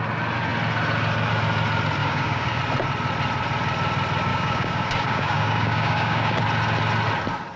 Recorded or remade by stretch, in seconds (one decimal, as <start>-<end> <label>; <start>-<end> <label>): 0.0-2.0 recorded; 2.0-2.6 remade; 2.6-4.3 recorded; 4.3-6.4 remade; 6.4-7.6 recorded